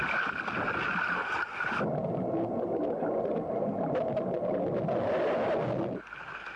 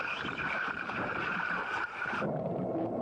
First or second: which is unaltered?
first